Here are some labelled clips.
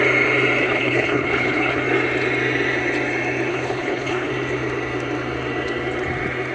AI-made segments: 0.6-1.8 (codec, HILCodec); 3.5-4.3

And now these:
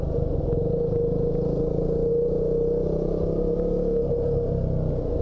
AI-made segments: none

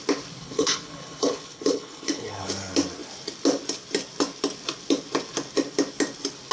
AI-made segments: 0.4-2.5 (codec, HILCodec)

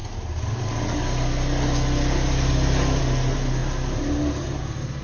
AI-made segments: none